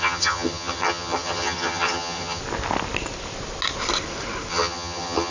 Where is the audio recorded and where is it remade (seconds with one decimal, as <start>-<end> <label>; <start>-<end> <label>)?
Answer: 0.0-2.4 remade; 2.4-4.5 recorded; 4.5-5.3 remade